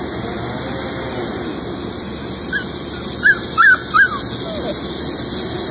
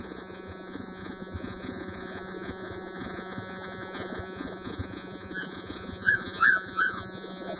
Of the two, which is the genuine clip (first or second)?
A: first